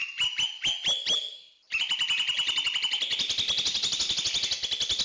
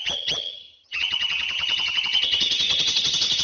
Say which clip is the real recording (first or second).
first